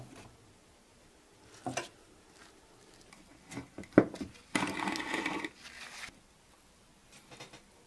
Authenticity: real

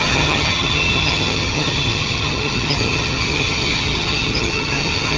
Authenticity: fake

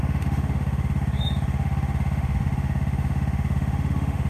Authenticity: fake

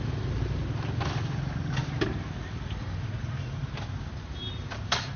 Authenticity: real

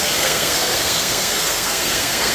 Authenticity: fake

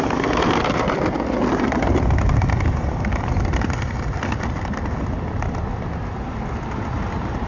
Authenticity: real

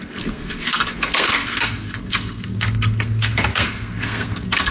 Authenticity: fake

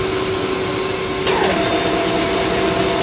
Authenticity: real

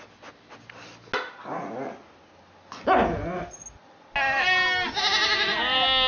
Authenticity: real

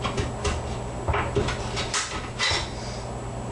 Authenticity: real